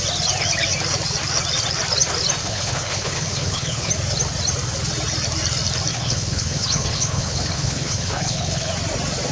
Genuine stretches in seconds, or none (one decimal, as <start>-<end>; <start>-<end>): 0.0-2.4; 3.9-5.9; 8.7-9.3

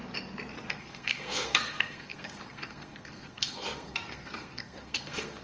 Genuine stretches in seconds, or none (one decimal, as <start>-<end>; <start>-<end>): 0.0-0.7

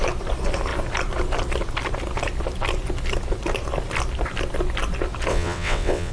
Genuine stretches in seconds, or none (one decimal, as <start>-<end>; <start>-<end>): 0.0-5.3

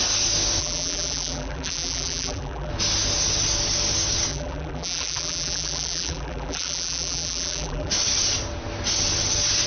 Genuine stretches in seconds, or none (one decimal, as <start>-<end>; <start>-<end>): 0.0-0.6; 2.7-4.3; 7.9-9.7

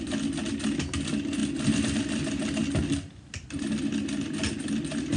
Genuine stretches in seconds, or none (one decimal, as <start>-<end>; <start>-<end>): 0.0-5.2

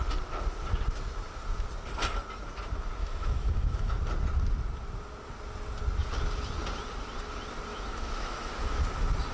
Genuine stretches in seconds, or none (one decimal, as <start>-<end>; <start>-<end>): 0.0-3.0; 3.9-7.7; 8.8-9.3